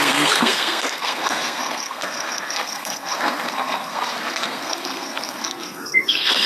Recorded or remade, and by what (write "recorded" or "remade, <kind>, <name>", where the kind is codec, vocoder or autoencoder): remade, codec, SNAC